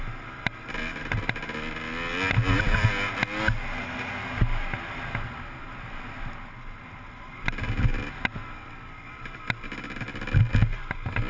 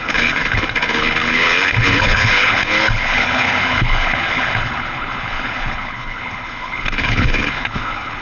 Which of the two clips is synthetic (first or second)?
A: second